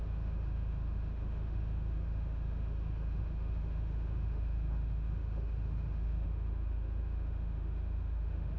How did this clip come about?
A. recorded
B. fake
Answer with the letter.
B